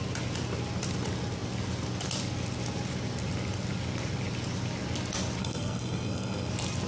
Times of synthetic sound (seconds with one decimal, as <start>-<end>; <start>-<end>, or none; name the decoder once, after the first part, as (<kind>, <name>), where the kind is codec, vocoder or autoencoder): 5.4-6.5 (codec, SNAC)